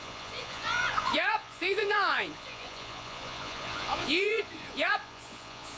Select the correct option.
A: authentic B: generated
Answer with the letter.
B